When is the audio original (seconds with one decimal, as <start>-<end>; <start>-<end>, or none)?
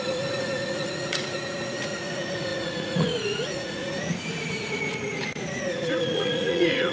none